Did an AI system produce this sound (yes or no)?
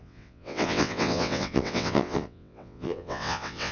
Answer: yes